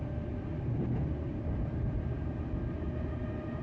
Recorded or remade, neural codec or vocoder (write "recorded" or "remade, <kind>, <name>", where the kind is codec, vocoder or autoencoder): recorded